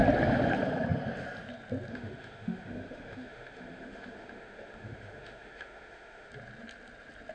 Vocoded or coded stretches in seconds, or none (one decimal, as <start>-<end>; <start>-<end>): 1.9-6.3